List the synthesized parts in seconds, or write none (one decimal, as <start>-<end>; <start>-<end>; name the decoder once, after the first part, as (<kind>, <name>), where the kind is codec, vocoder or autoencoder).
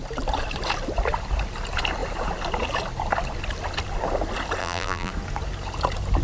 4.6-5.1 (vocoder, BigVGAN v2)